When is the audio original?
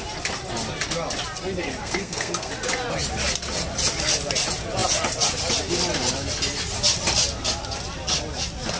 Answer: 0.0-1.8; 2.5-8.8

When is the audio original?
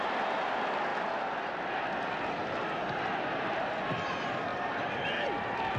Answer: 0.0-0.9; 1.6-2.4; 3.6-4.5